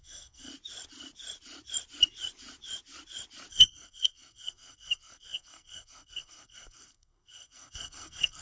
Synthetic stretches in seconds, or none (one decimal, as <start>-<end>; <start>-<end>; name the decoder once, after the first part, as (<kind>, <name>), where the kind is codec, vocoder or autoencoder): 0.0-0.5 (codec, SNAC); 3.5-8.4